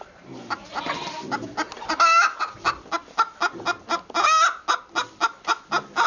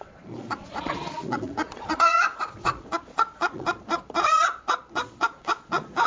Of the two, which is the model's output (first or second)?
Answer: second